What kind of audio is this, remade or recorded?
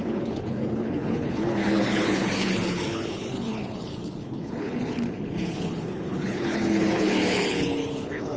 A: remade